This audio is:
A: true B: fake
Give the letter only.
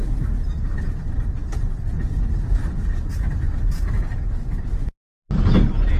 A